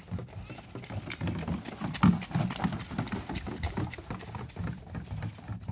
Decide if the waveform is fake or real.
real